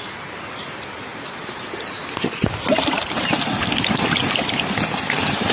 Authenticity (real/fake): real